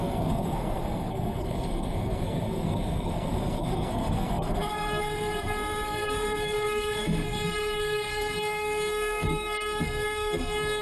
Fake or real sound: fake